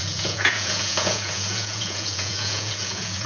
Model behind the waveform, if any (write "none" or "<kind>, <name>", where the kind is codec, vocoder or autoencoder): vocoder, Vocos